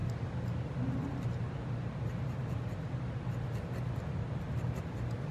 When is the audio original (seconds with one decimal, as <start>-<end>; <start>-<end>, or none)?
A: 0.0-5.3